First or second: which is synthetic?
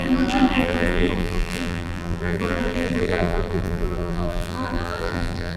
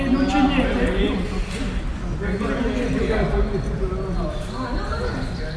first